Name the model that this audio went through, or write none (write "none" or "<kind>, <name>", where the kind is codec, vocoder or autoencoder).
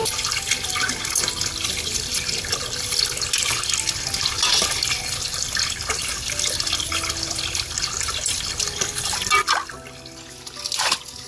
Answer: none